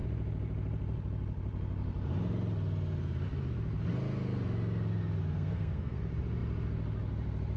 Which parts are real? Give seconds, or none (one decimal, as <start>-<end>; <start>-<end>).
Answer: 0.0-5.3; 6.0-7.6